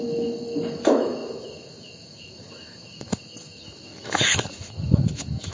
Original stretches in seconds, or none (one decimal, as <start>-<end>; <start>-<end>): none